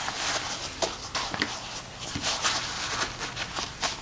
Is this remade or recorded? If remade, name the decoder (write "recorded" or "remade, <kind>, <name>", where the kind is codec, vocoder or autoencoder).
recorded